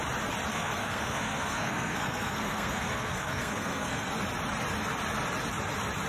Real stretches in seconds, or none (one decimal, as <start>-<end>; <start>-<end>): 0.0-0.5; 4.1-6.1